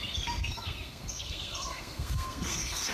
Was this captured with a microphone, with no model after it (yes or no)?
no